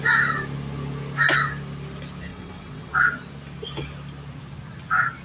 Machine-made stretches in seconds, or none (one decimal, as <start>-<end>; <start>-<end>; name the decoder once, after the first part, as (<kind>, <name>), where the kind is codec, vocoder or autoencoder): 2.3-2.9 (vocoder, WaveNeXt)